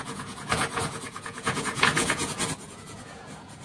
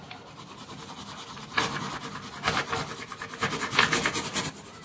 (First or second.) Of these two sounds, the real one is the second